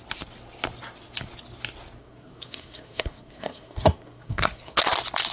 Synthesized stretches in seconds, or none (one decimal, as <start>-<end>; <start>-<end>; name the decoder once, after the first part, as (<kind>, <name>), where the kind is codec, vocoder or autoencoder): 2.0-4.8 (codec, SNAC)